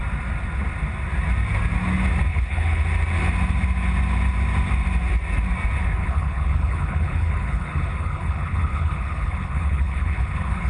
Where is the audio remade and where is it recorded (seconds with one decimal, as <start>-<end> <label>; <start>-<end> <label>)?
0.0-2.3 recorded; 2.3-2.8 remade; 2.8-6.0 recorded; 6.0-10.7 remade